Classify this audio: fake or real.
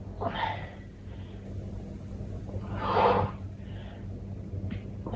real